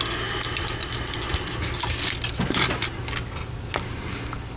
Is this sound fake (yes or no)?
no